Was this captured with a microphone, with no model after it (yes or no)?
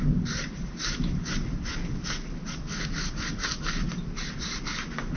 yes